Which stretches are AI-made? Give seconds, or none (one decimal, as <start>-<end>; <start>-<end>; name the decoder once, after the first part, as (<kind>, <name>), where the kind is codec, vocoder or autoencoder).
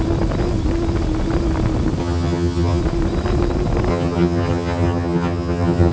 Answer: 2.0-2.8 (vocoder, HiFi-GAN); 3.9-5.9